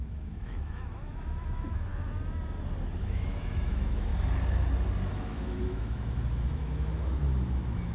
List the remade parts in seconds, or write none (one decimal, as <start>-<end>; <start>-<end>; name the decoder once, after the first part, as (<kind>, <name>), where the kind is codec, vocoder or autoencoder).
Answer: 0.0-1.9 (autoencoder, DAC-VAE); 3.0-4.1; 5.1-7.9